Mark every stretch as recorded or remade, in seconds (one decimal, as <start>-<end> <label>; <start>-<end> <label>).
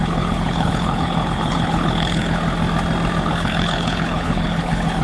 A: 0.0-2.4 remade; 2.4-3.2 recorded; 3.2-5.0 remade